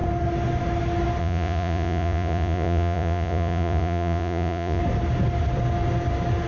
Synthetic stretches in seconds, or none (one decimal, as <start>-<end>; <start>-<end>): 1.2-4.8